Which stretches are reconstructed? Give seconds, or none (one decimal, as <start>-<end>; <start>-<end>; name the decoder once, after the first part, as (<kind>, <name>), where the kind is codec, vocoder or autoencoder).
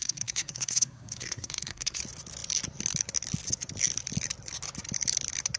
0.0-2.0 (codec, SNAC)